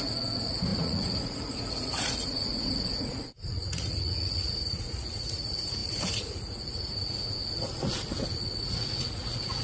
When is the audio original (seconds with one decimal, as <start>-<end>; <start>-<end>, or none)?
7.4-8.6